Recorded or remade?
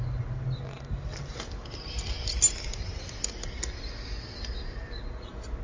recorded